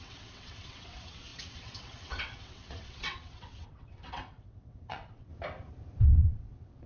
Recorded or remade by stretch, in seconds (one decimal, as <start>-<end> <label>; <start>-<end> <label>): 0.0-5.3 remade; 5.3-6.0 recorded; 6.0-6.9 remade